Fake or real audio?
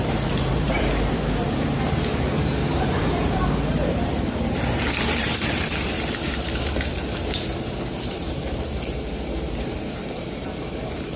fake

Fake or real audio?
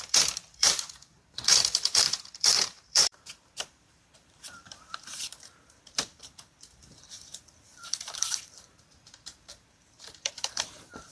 fake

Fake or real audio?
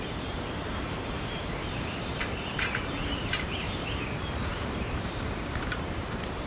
fake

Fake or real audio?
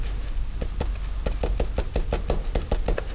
real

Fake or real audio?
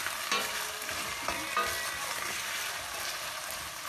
real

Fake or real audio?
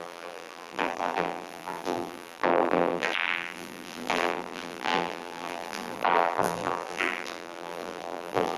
fake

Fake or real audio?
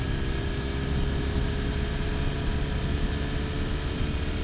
real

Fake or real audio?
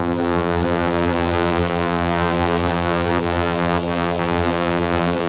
fake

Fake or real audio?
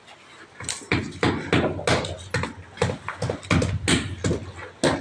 real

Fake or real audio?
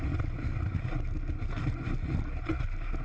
real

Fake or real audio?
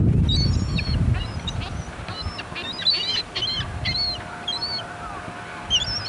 real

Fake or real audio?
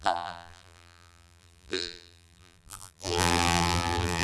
fake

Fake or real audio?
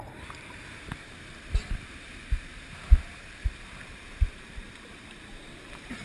fake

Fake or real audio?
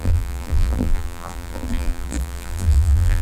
fake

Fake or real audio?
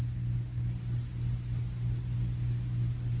real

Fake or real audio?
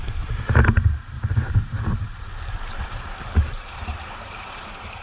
fake